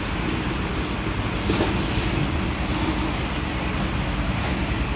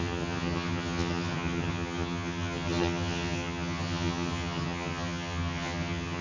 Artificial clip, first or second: second